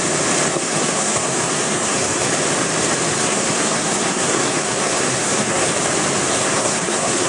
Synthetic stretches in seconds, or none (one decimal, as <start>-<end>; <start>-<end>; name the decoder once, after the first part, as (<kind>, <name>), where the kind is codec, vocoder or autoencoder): 0.5-2.3 (codec, SNAC); 3.1-5.7; 6.3-7.3